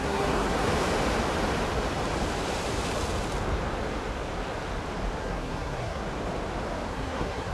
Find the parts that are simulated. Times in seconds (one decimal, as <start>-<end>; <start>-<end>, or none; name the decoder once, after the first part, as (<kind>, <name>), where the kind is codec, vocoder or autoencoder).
0.0-0.7 (codec, SNAC); 5.2-6.0; 6.9-7.5